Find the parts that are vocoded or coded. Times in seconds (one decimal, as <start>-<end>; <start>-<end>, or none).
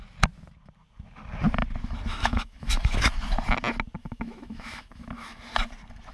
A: 2.1-3.0; 4.0-5.4